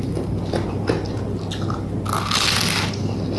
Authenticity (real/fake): real